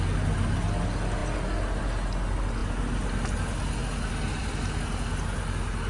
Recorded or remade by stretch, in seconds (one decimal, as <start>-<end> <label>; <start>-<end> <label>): 0.0-5.9 recorded